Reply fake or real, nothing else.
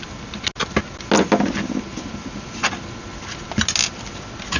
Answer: real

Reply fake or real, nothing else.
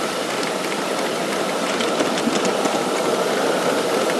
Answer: real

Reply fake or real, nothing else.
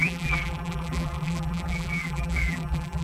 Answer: fake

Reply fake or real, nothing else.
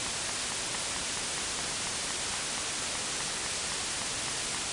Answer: real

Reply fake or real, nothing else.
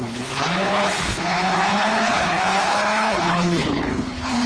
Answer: fake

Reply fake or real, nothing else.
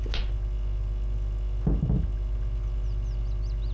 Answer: real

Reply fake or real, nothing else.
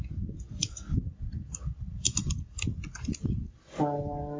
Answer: real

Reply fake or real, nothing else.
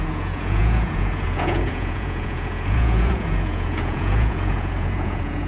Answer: fake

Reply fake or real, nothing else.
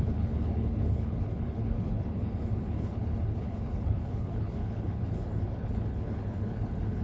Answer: fake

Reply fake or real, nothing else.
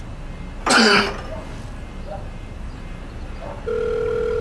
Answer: real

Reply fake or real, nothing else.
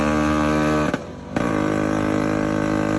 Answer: real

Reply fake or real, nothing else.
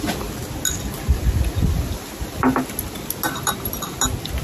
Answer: real